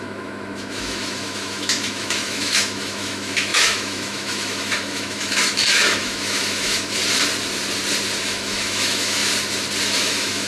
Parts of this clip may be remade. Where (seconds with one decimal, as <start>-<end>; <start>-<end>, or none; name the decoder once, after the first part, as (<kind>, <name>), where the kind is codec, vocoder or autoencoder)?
0.0-7.0 (autoencoder, DAC-VAE); 8.2-9.2; 9.8-10.5